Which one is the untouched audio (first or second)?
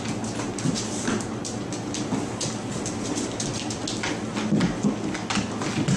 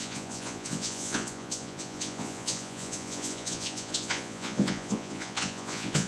first